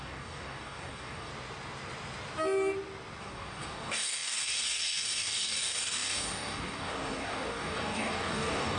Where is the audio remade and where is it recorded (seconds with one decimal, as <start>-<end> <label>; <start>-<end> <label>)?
0.0-1.3 remade; 1.3-3.2 recorded; 3.2-8.8 remade